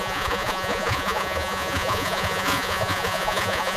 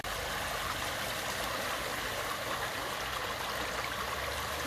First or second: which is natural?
second